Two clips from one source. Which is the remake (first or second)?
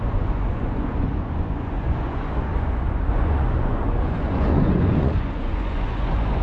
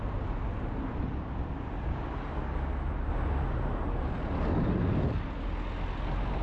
first